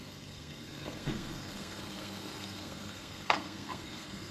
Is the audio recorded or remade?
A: remade